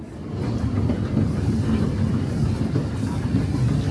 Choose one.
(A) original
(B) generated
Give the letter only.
A